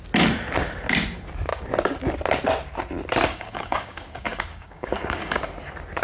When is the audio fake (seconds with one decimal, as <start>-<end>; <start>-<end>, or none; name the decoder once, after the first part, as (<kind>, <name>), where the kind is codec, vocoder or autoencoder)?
3.3-5.4 (codec, DAC)